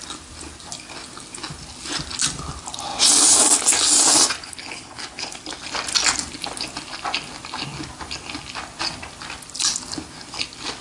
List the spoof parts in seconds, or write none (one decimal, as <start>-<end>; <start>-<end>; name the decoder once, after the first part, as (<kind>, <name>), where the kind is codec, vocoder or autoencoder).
4.4-5.4 (codec, HILCodec)